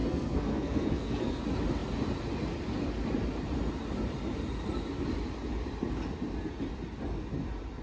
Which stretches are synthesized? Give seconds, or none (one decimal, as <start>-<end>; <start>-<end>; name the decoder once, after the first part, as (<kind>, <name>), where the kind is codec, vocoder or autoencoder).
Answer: 0.0-1.4 (codec, SNAC)